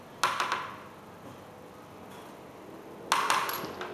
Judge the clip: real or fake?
real